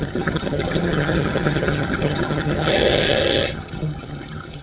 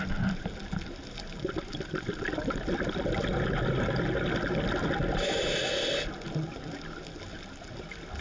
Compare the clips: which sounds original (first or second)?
second